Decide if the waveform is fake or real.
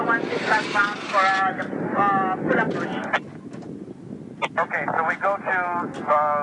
real